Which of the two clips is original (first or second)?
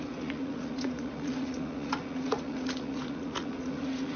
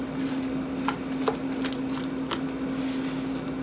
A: second